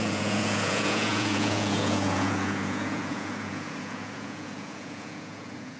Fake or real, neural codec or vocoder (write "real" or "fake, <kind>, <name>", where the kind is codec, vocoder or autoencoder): fake, vocoder, Vocos